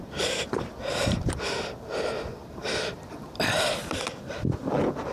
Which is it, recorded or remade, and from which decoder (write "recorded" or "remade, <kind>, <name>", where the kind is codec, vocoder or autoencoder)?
remade, vocoder, BigVGAN v2